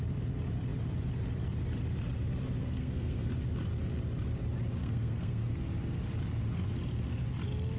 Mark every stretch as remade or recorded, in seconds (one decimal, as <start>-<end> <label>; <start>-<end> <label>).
0.0-2.6 recorded; 2.6-3.3 remade; 3.3-4.8 recorded; 4.8-5.5 remade; 5.5-7.8 recorded